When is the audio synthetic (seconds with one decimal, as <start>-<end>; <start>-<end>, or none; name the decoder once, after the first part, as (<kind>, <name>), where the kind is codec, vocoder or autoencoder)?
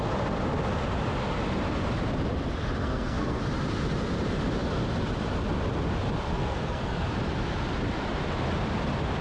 2.8-3.4 (codec, SNAC); 6.3-7.2